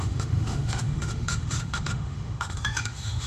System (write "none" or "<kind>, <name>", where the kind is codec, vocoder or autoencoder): autoencoder, DAC-VAE